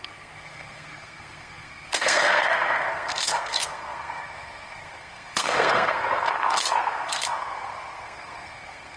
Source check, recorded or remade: remade